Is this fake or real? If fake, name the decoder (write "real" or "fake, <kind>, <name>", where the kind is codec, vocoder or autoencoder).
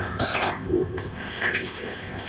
fake, codec, ZipCodec